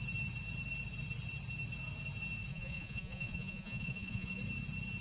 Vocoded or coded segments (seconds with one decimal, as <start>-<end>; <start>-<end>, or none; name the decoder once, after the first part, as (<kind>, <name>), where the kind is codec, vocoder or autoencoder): 2.5-4.4 (vocoder, Vocos)